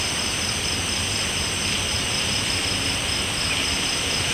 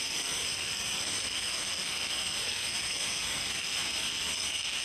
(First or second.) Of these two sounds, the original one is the first